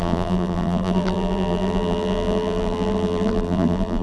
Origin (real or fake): fake